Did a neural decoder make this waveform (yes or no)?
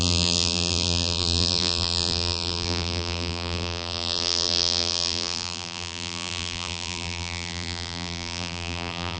yes